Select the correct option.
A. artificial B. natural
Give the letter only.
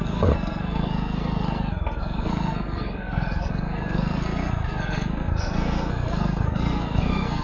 A